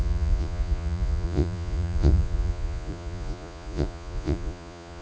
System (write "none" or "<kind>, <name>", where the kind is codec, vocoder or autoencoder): vocoder, Vocos